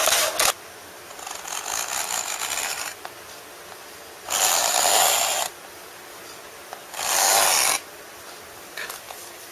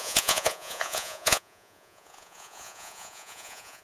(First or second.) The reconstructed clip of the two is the second